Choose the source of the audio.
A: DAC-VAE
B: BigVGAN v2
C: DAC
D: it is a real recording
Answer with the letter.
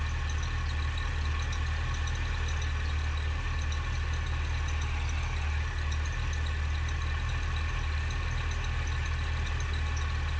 D